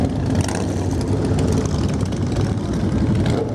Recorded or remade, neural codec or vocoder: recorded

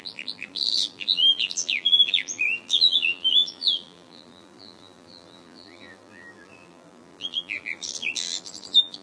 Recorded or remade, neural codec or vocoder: remade, vocoder, BigVGAN v2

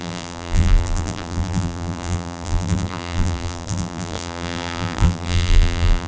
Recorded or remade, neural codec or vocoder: remade, vocoder, BigVGAN v2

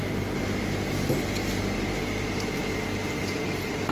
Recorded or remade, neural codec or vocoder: recorded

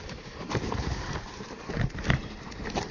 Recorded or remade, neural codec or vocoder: remade, vocoder, BigVGAN v2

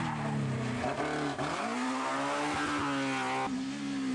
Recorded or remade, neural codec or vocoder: recorded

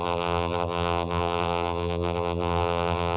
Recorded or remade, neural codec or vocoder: remade, vocoder, BigVGAN v2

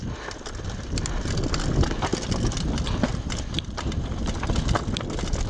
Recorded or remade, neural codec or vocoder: recorded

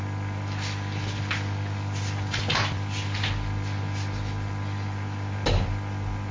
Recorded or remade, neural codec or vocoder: recorded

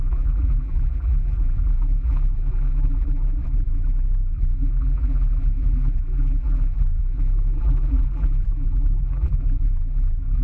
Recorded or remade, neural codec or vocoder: remade, vocoder, BigVGAN v2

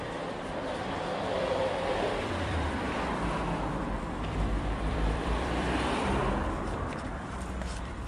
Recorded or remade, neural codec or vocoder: remade, vocoder, BigVGAN v2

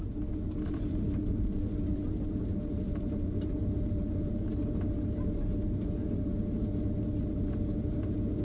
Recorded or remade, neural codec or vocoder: remade, vocoder, BigVGAN v2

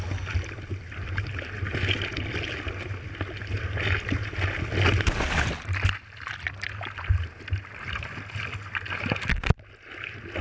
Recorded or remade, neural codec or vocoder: recorded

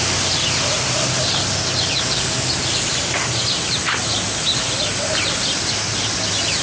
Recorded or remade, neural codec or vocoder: remade, vocoder, BigVGAN v2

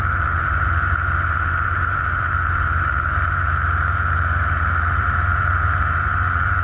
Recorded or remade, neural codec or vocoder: remade, vocoder, BigVGAN v2